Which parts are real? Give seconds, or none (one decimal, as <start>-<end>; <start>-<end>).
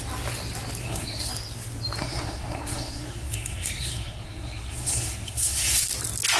0.0-0.8; 1.3-2.0; 5.8-6.4